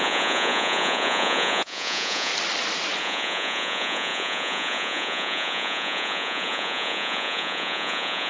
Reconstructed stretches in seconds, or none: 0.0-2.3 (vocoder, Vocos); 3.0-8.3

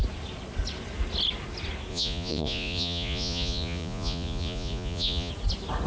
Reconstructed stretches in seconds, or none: 1.9-5.3 (vocoder, Vocos)

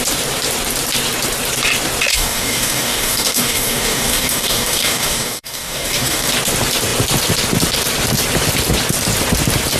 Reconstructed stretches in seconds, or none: 2.1-6.3 (codec, DAC)

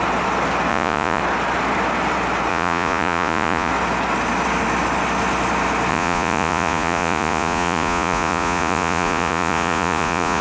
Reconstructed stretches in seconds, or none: 0.7-1.2 (vocoder, Vocos); 2.5-3.7; 5.9-10.4

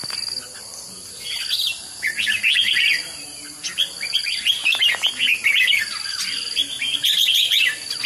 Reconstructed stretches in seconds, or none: none

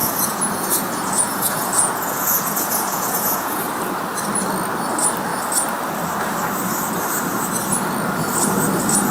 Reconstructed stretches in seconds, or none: 0.0-3.5 (vocoder, Vocos)

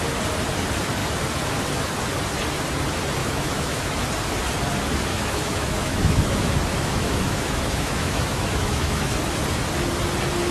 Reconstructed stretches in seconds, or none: 3.2-4.0 (autoencoder, DAC-VAE); 5.1-9.1